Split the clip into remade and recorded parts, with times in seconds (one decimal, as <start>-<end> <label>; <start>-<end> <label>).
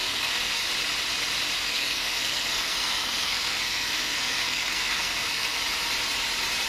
0.0-0.6 remade; 0.6-1.6 recorded; 1.6-5.6 remade; 5.6-6.7 recorded